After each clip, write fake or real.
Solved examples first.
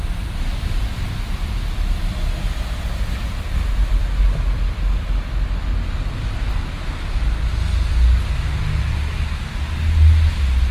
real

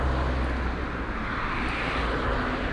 real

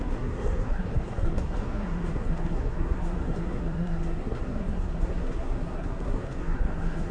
fake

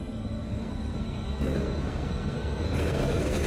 fake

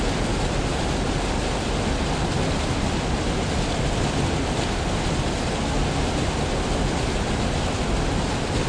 real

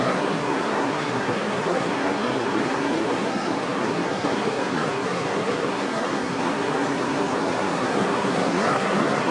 fake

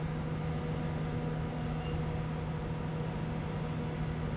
real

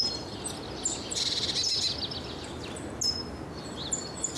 real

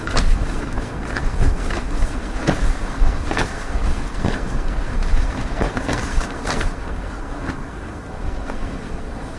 fake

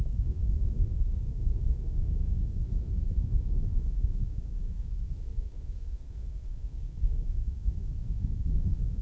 fake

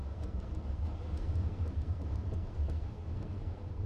fake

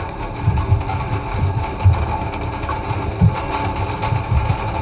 real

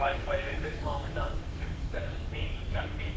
fake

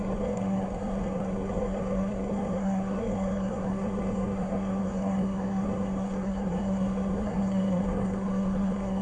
fake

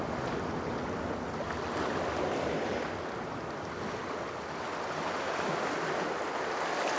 real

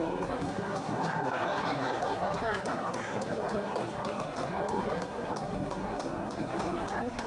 fake